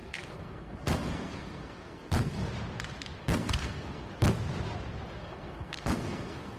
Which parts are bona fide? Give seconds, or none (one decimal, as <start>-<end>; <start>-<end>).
2.5-3.2; 4.1-5.2